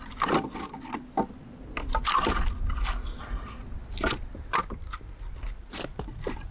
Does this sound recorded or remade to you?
recorded